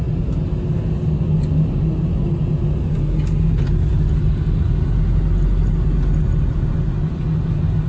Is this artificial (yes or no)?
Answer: no